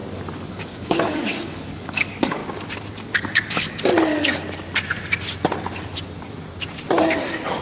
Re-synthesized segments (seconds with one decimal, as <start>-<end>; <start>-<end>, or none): 0.5-2.4; 3.0-3.9